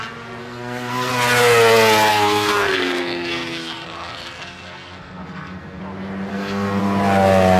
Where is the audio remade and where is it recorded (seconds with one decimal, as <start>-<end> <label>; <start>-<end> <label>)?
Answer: 0.0-0.4 recorded; 0.4-1.1 remade; 1.1-2.1 recorded; 2.1-5.8 remade; 5.8-6.3 recorded; 6.3-6.8 remade; 6.8-7.6 recorded